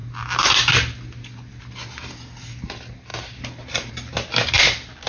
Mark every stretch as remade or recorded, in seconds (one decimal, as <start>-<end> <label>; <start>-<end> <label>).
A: 0.0-5.1 recorded